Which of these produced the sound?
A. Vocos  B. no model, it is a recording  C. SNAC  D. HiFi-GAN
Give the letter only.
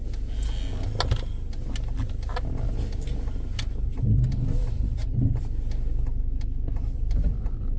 B